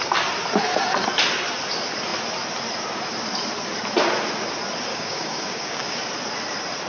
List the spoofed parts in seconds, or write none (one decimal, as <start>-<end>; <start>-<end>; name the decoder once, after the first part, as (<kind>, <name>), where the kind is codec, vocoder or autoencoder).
4.9-6.0 (codec, DAC)